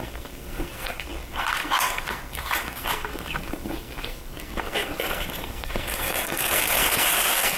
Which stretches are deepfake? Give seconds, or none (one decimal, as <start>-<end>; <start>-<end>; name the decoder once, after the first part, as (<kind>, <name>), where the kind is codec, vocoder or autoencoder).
0.0-7.6 (codec, SNAC)